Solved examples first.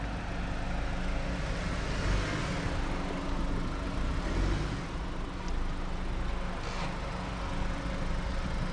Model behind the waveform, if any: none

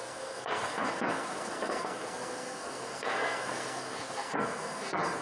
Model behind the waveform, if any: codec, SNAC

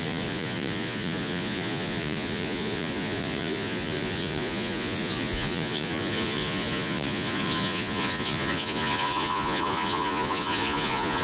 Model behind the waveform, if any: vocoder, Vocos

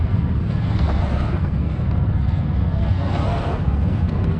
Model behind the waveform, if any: codec, SNAC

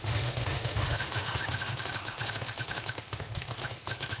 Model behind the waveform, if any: autoencoder, DAC-VAE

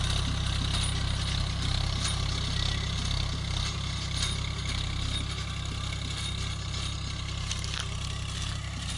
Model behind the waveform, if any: none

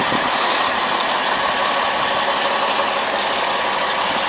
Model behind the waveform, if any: none